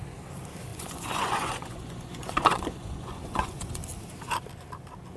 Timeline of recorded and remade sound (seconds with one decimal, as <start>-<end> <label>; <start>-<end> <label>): 0.0-0.7 recorded; 0.7-3.8 remade; 3.8-5.2 recorded